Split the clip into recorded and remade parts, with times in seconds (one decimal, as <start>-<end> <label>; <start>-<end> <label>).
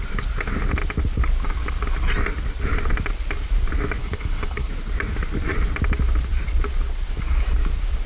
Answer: 0.0-4.0 recorded; 4.0-4.7 remade; 4.7-8.1 recorded